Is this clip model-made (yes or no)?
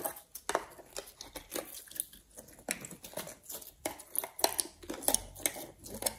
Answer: no